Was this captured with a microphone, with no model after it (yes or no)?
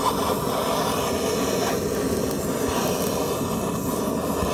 yes